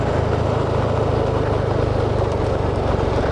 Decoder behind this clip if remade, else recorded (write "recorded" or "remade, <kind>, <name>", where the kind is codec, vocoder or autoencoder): recorded